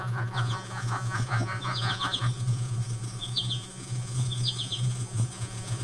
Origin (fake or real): fake